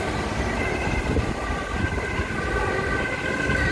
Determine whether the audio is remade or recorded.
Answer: recorded